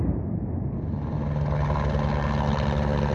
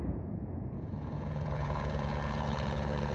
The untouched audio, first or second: first